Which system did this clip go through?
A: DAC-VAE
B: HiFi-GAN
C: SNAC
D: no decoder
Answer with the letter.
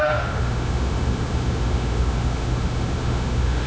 A